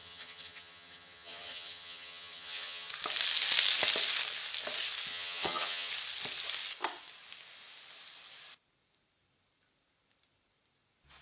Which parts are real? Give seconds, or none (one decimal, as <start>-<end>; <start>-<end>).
2.9-5.1; 5.9-11.2